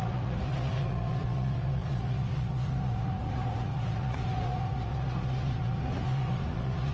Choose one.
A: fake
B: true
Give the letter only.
A